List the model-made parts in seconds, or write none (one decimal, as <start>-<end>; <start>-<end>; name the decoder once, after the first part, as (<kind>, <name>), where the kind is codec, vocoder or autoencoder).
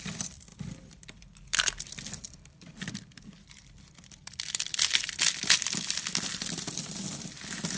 0.0-7.8 (vocoder, BigVGAN v2)